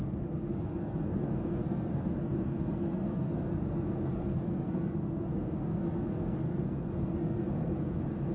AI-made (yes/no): yes